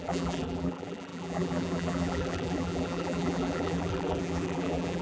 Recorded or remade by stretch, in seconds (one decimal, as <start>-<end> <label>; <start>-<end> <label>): 0.0-5.0 remade